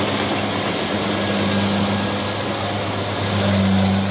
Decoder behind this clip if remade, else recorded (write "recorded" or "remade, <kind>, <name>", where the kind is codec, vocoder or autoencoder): recorded